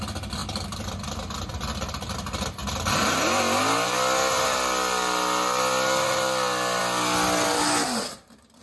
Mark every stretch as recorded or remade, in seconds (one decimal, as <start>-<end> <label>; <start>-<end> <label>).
0.0-8.6 recorded